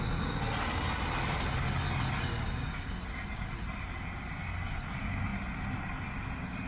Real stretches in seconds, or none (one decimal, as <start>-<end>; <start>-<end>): 0.0-6.7